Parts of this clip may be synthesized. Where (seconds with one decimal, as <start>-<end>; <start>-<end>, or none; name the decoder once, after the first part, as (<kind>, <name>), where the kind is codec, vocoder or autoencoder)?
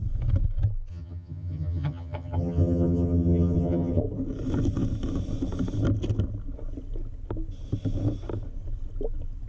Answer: 0.9-4.0 (vocoder, HiFi-GAN)